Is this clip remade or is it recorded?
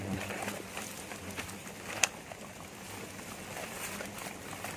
recorded